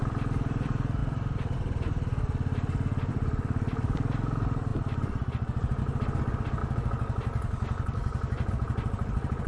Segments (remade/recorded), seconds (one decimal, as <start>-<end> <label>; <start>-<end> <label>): 0.0-6.6 remade; 6.6-8.5 recorded; 8.5-9.5 remade